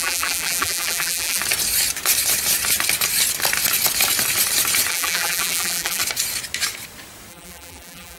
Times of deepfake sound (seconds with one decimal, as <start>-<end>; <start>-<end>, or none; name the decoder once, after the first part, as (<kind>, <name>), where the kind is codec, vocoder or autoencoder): 0.0-1.4 (vocoder, BigVGAN v2); 4.9-6.0; 7.3-8.2